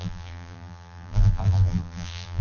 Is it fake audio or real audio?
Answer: fake